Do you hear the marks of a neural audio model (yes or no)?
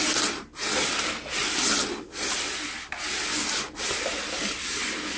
no